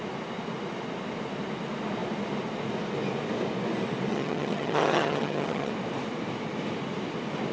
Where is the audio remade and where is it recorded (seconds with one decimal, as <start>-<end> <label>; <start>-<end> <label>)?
0.0-4.1 recorded; 4.1-5.7 remade; 5.7-7.5 recorded